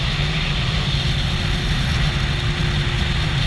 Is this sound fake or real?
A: real